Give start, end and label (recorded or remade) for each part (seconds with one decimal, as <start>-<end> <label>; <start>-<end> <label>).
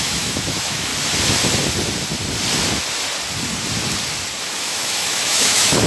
0.0-0.9 remade; 0.9-4.4 recorded; 4.4-5.9 remade